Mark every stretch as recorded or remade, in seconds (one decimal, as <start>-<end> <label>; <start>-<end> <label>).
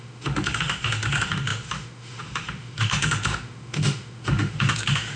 0.0-5.2 remade